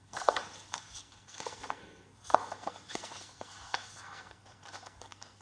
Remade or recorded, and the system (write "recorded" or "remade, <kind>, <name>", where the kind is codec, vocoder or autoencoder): remade, codec, SNAC